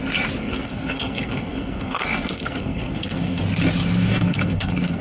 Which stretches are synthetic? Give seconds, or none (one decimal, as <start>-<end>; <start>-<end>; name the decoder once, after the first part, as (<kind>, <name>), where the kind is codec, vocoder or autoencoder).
0.4-3.4 (codec, SNAC); 4.1-5.0